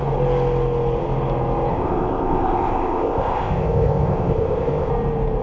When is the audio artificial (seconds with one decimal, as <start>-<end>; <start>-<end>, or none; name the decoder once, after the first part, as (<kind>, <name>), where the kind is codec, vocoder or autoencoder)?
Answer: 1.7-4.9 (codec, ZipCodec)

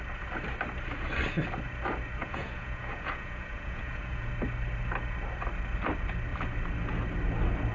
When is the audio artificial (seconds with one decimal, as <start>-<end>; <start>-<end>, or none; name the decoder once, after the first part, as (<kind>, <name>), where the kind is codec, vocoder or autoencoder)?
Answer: 2.2-4.3 (vocoder, Vocos)

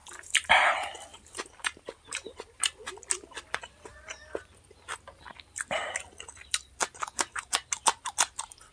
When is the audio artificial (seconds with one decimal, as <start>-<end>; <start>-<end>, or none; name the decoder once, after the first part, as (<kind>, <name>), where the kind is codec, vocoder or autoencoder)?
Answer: 0.0-0.7 (vocoder, BigVGAN v2); 1.1-2.8

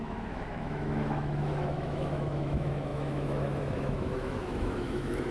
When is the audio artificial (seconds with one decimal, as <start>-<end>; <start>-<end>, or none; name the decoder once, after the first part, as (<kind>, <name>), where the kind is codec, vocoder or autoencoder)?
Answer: 0.0-5.3 (autoencoder, DAC-VAE)

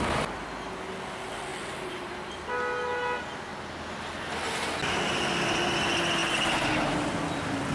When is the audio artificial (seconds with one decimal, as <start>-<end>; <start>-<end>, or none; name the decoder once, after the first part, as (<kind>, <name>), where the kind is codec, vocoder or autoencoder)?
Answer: 1.5-2.5 (vocoder, BigVGAN v2)

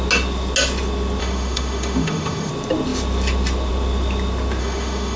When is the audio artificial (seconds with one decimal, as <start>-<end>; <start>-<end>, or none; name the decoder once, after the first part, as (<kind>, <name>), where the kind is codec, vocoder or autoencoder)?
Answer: 1.2-2.5 (autoencoder, DAC-VAE); 4.6-5.2

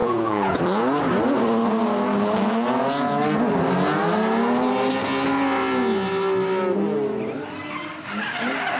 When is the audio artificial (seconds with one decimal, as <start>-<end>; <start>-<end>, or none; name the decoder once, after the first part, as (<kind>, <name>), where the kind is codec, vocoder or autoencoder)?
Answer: 0.0-0.6 (vocoder, Vocos)

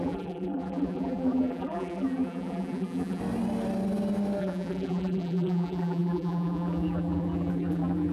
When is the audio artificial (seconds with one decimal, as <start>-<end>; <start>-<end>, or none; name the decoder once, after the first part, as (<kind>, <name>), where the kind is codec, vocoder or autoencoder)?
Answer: 0.0-3.2 (vocoder, BigVGAN v2); 4.4-8.1